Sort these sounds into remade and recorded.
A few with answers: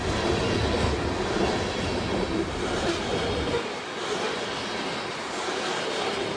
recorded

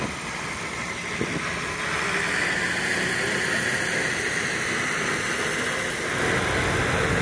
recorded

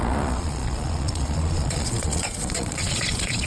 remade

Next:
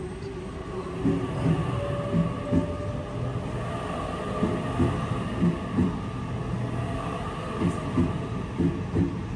recorded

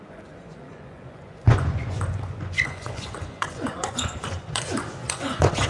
remade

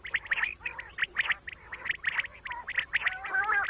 recorded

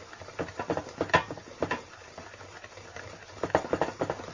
recorded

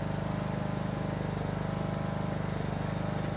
recorded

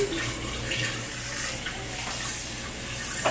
recorded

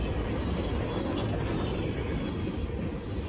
recorded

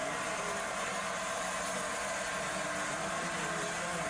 recorded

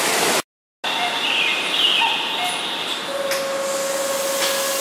recorded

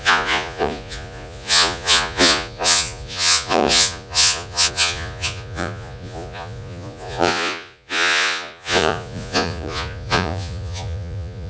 remade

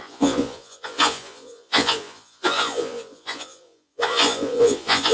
remade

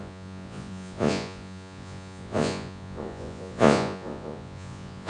remade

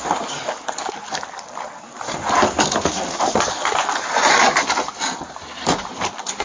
recorded